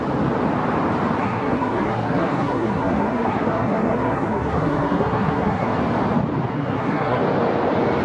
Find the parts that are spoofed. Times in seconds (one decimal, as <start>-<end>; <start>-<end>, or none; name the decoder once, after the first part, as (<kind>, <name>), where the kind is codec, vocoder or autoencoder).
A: 1.2-5.8 (codec, SNAC); 6.5-7.2